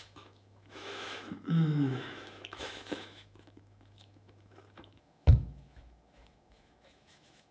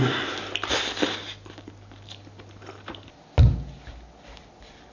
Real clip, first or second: second